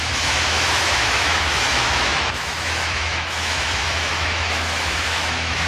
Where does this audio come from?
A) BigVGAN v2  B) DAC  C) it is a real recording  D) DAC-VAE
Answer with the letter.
D